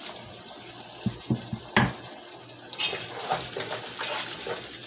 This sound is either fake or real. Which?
real